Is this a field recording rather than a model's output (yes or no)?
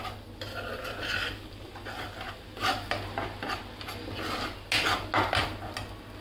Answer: yes